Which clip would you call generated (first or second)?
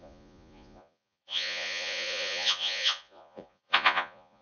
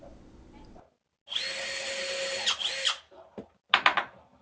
first